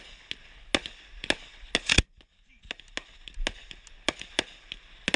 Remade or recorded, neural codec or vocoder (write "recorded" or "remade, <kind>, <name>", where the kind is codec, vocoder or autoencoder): recorded